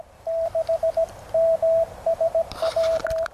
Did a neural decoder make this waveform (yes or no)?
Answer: yes